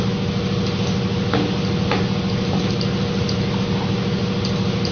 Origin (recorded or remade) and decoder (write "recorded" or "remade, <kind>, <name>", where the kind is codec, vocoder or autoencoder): recorded